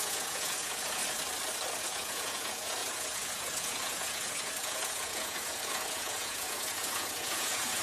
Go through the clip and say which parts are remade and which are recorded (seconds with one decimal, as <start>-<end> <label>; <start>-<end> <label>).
0.0-1.0 remade; 1.0-1.8 recorded; 1.8-7.8 remade